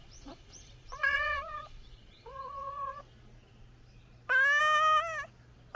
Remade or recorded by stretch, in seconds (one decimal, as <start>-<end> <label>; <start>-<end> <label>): 0.0-3.0 remade; 3.0-5.8 recorded